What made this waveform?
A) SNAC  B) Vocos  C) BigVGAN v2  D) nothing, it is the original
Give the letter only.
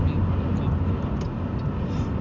D